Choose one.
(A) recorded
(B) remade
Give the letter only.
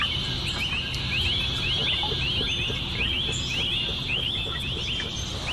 A